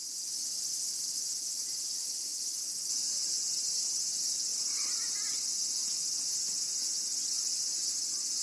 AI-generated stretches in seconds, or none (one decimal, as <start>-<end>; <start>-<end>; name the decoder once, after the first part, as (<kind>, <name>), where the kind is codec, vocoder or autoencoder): 0.0-3.1 (vocoder, BigVGAN v2)